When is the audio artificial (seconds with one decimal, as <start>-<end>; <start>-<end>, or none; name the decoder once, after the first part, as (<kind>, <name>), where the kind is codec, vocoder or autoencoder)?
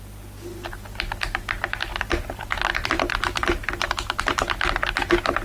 1.9-4.2 (vocoder, BigVGAN v2)